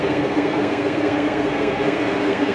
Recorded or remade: remade